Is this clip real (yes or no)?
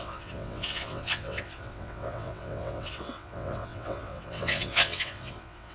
no